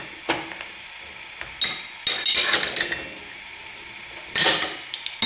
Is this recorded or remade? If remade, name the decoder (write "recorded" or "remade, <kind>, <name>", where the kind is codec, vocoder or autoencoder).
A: recorded